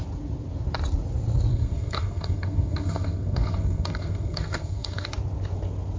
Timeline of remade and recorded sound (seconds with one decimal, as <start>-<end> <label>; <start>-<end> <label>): 0.0-1.5 recorded; 1.5-5.1 remade; 5.1-6.0 recorded